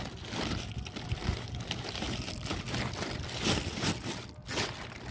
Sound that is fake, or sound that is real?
real